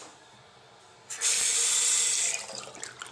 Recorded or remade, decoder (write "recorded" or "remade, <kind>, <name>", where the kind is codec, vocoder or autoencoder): recorded